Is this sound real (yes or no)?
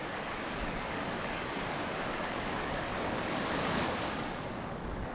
no